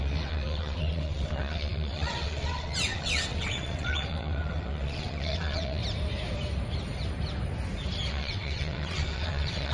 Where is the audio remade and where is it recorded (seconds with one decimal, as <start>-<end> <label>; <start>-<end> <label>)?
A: 0.0-5.8 remade; 5.8-8.1 recorded; 8.1-9.7 remade